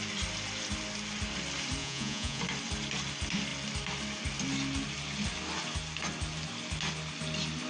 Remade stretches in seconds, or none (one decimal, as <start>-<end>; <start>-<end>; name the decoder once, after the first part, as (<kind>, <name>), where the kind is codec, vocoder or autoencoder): 1.8-2.4 (vocoder, Vocos)